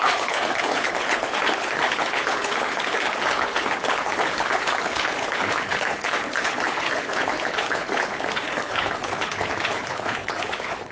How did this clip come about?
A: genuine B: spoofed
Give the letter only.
B